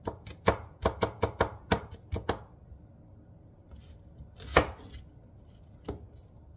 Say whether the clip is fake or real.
real